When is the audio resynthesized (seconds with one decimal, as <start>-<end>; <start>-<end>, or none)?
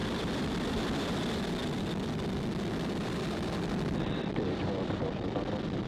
0.0-5.9